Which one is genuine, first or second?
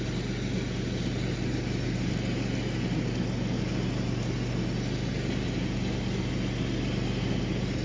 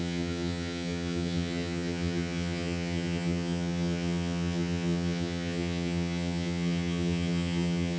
first